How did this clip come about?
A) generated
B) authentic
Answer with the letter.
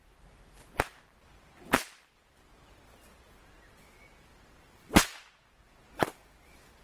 A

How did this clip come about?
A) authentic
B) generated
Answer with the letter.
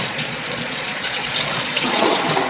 B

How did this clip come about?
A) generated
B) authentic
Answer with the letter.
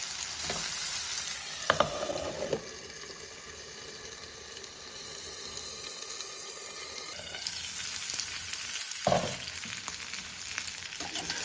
B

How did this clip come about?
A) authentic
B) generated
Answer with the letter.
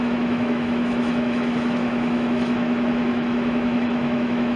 B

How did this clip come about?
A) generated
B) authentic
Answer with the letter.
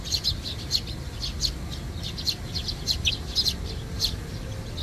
B